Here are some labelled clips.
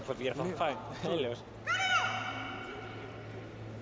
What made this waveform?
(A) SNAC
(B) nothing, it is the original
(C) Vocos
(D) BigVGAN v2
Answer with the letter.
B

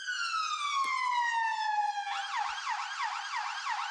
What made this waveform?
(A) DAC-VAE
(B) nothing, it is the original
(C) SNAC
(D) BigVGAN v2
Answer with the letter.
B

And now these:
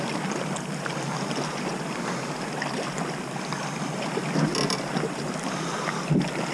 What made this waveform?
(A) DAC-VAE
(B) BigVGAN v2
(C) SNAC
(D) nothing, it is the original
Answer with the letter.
D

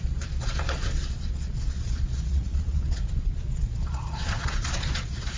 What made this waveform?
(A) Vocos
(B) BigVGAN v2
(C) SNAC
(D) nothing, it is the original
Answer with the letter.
A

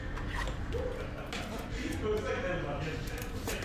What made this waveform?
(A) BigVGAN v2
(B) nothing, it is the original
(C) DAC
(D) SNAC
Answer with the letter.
B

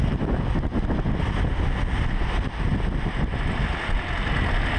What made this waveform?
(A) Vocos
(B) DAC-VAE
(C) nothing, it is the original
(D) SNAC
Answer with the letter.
C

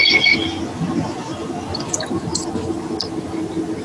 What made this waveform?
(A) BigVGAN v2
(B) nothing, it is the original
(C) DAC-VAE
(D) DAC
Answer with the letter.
B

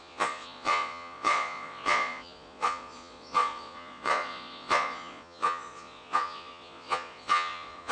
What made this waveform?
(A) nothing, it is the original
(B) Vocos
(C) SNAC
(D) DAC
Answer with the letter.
B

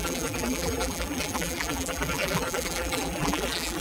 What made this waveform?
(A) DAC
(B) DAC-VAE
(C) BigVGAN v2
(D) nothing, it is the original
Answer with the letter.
C